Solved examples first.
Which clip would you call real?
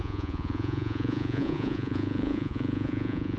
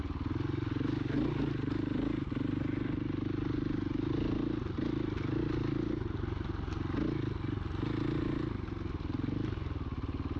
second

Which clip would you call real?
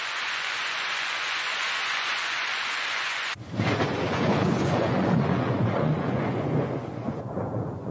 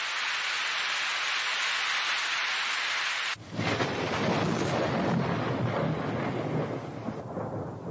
second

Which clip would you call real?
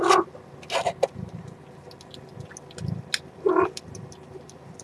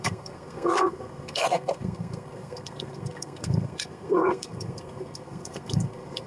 first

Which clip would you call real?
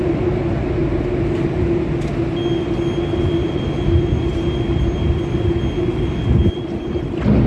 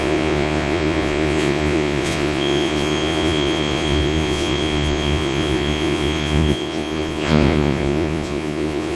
first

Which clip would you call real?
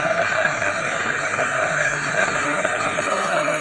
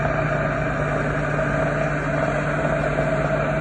second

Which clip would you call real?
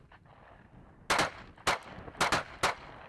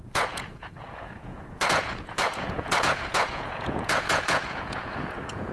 first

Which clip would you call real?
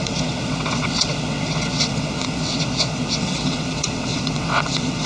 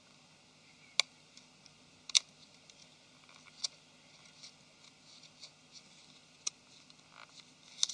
second